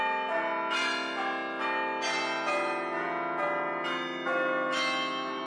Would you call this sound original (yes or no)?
yes